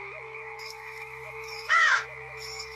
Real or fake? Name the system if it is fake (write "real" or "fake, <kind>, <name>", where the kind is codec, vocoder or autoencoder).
fake, autoencoder, DAC-VAE